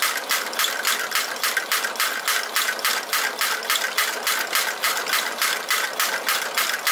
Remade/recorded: recorded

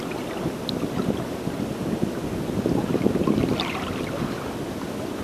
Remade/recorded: recorded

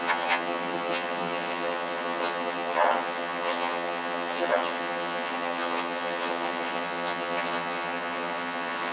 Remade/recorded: remade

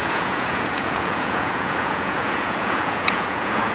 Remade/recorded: remade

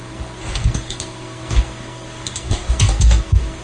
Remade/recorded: remade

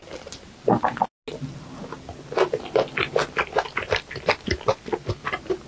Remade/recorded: recorded